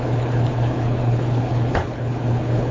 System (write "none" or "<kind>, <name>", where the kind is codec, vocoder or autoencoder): codec, HILCodec